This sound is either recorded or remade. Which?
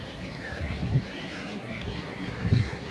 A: remade